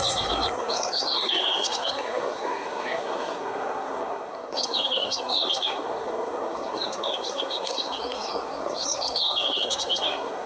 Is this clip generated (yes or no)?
yes